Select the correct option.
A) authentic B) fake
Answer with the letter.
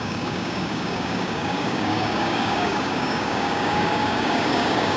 B